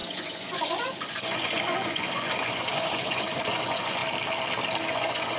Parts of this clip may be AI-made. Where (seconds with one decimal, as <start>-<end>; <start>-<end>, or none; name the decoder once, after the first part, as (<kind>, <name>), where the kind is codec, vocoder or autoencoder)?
0.0-4.0 (vocoder, Vocos); 4.9-5.4